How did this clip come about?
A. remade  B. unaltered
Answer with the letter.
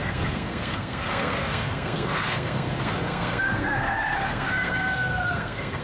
A